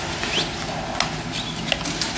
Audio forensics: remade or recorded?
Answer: recorded